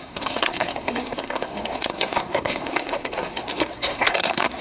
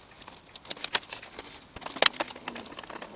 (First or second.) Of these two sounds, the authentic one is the second